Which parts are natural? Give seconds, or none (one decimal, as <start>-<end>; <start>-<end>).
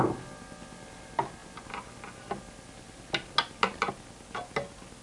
0.0-5.0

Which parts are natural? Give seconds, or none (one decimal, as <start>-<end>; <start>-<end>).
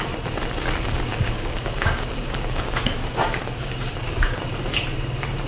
0.0-1.1; 4.4-5.5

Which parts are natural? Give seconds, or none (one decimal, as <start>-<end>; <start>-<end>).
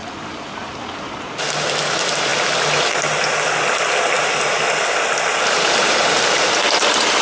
0.0-7.2